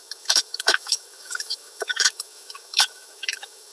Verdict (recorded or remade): remade